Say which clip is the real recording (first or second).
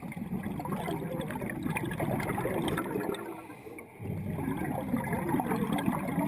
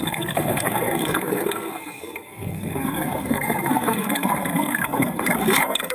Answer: first